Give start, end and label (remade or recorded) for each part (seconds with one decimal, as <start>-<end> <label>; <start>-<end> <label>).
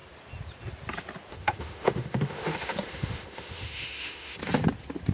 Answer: 0.0-1.3 recorded; 1.3-4.4 remade; 4.4-5.1 recorded